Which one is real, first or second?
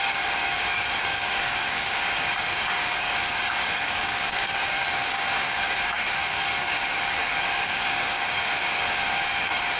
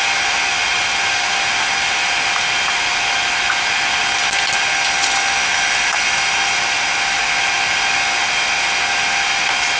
second